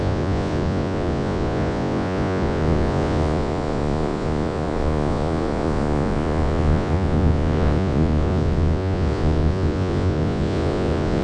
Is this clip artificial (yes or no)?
yes